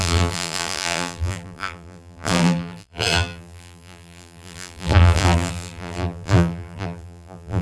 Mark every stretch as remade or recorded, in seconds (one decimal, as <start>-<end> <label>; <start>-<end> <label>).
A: 0.0-7.6 remade